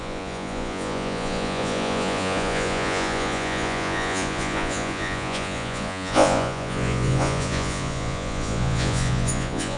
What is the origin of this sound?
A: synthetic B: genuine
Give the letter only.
A